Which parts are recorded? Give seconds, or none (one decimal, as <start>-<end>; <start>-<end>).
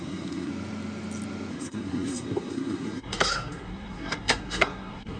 0.5-1.5